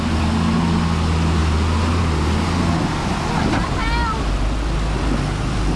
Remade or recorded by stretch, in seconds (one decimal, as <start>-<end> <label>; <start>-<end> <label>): 0.0-5.8 recorded